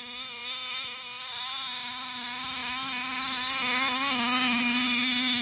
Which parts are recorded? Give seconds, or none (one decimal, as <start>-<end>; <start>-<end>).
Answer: 0.0-5.4